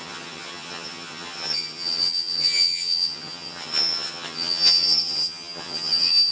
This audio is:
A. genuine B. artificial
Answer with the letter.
B